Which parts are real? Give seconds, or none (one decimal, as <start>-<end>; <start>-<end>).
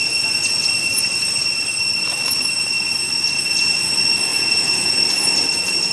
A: 0.0-4.3; 5.1-5.9